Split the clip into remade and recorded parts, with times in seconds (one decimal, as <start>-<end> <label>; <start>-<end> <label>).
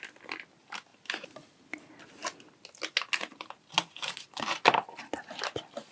0.0-5.9 recorded